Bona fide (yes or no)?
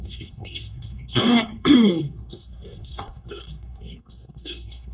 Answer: no